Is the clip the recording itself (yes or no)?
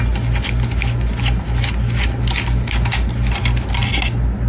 yes